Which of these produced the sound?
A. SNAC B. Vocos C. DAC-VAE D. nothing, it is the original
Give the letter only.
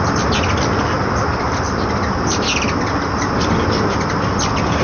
D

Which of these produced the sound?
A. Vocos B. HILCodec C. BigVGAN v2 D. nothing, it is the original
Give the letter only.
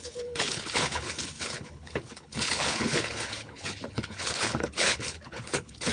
B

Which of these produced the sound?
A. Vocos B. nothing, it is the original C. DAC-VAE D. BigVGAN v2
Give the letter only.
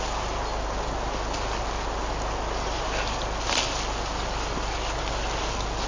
B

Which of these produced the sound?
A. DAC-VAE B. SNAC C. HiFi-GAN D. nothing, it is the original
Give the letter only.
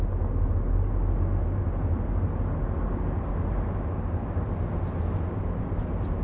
D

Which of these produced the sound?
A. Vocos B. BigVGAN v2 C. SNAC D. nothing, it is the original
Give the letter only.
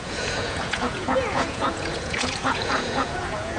A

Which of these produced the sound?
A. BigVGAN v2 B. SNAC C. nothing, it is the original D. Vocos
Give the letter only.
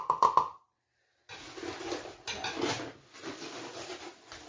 C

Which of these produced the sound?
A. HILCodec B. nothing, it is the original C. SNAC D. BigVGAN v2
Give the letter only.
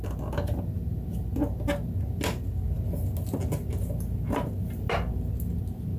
B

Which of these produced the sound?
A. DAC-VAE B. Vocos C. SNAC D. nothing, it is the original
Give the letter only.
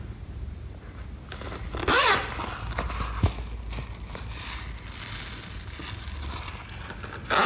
D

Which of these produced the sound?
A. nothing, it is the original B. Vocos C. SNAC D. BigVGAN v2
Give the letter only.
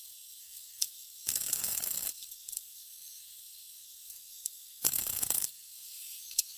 C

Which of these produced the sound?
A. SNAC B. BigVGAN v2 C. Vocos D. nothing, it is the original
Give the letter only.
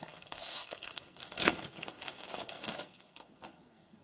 A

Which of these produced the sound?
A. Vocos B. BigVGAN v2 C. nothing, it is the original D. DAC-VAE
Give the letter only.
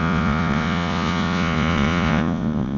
A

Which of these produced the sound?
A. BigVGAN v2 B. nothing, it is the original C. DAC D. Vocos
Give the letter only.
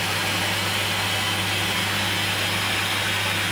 B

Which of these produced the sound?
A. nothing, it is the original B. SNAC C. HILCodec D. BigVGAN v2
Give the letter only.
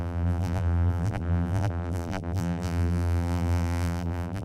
D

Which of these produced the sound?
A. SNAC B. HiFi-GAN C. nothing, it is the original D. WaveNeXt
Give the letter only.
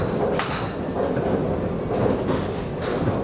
C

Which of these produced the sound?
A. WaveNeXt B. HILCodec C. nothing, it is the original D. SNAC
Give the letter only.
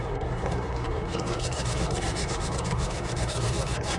D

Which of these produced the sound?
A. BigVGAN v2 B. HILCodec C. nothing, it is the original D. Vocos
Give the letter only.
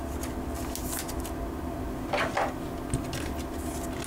C